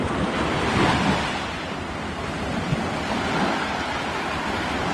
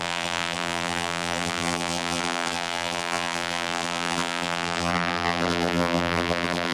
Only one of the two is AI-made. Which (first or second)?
second